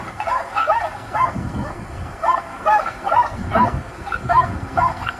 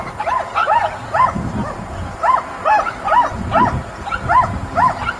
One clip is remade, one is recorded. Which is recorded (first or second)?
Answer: second